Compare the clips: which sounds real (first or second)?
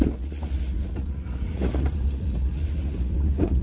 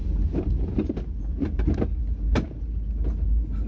second